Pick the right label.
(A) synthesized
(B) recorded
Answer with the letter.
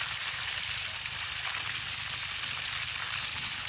B